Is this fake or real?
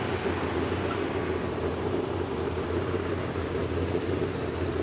real